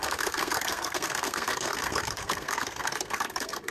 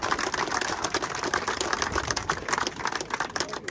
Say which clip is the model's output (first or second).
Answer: first